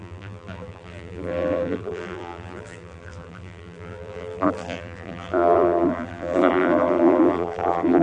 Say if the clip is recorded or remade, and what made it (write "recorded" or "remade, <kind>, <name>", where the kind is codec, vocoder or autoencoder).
remade, vocoder, BigVGAN v2